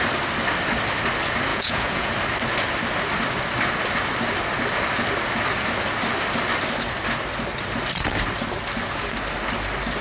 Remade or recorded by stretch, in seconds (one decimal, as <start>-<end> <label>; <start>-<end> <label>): 0.0-1.5 recorded; 1.5-2.1 remade; 2.1-10.0 recorded